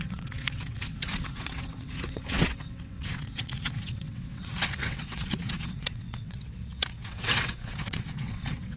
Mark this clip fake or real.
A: fake